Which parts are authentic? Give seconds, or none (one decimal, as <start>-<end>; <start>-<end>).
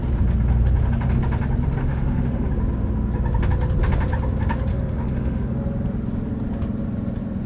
0.0-1.8; 2.5-4.7; 5.5-7.5